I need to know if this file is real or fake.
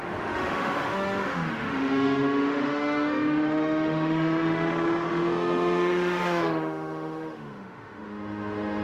fake